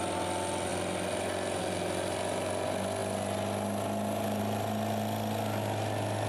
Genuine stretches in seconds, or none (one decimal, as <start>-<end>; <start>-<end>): 0.0-6.3